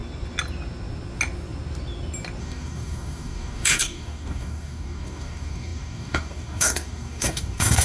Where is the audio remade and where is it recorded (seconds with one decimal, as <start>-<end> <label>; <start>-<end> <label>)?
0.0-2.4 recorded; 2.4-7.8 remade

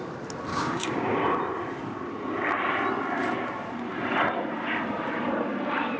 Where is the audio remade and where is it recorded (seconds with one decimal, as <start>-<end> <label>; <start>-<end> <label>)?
0.0-0.5 recorded; 0.5-1.2 remade; 1.2-6.0 recorded

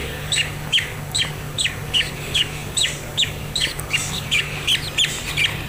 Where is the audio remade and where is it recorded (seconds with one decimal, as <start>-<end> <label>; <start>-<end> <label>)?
0.0-4.7 remade; 4.7-5.7 recorded

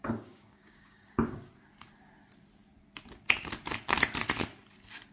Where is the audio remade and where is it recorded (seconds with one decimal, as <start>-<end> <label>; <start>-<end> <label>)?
0.0-1.5 remade; 1.5-5.1 recorded

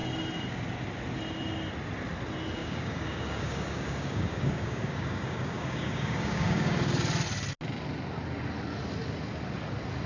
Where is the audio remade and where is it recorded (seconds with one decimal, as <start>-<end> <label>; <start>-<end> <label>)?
0.0-2.6 recorded; 2.6-6.9 remade; 6.9-10.1 recorded

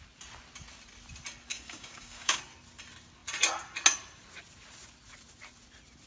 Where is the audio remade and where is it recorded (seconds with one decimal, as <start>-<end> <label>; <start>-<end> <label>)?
0.0-1.5 recorded; 1.5-2.4 remade; 2.4-6.1 recorded